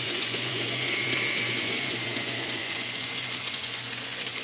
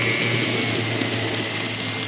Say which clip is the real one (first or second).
second